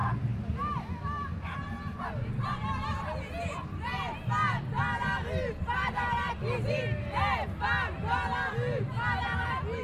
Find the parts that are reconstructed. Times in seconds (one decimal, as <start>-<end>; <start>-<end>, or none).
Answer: none